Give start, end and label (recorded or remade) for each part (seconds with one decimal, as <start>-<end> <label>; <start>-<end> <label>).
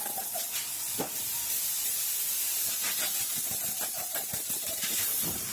0.0-4.2 recorded; 4.2-4.9 remade; 4.9-5.5 recorded